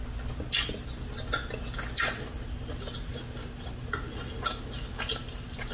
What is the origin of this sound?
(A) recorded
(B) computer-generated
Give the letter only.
A